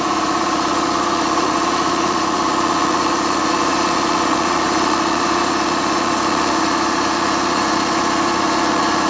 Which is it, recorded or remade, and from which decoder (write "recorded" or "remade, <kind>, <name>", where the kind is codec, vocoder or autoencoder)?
remade, vocoder, Vocos